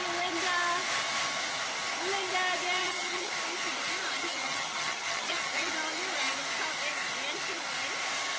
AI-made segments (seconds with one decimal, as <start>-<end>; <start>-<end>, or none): 2.8-3.3; 4.2-5.7